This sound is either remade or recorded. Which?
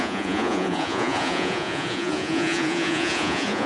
remade